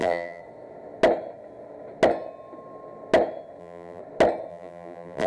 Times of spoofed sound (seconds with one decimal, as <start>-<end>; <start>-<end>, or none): 0.0-0.4; 3.6-4.0; 4.5-5.3